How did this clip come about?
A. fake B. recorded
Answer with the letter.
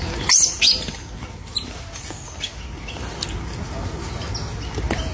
B